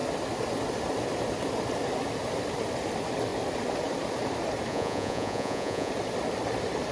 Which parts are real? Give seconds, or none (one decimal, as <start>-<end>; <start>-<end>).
0.0-4.7; 5.9-6.9